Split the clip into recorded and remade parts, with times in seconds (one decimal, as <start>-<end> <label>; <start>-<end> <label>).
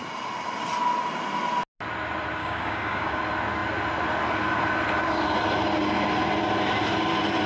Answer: 0.0-2.4 recorded; 2.4-3.2 remade; 3.2-7.5 recorded